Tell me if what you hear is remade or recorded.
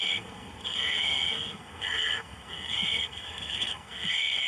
remade